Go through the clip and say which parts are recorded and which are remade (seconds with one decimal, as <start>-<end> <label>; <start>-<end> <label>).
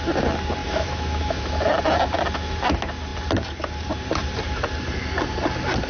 0.0-0.6 recorded; 0.6-1.5 remade; 1.5-5.9 recorded